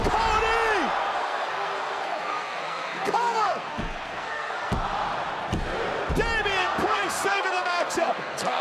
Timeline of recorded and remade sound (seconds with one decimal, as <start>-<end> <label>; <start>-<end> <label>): 0.0-1.0 recorded; 1.0-4.7 remade; 4.7-6.6 recorded; 6.6-8.6 remade